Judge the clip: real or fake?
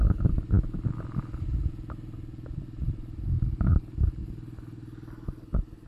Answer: real